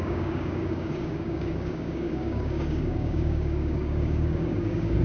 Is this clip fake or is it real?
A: fake